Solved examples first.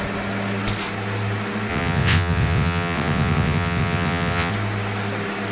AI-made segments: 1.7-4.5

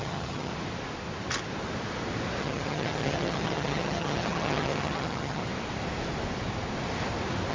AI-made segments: 0.0-0.5; 2.4-5.4